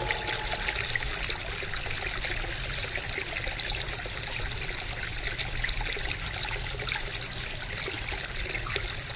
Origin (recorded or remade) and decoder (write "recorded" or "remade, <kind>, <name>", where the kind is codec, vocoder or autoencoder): recorded